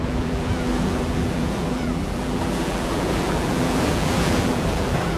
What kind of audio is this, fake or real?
fake